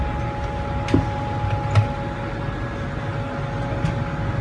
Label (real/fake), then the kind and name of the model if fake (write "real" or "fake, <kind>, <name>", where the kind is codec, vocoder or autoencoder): real